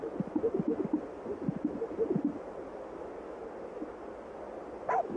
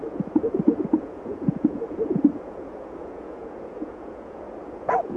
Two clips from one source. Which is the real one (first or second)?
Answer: first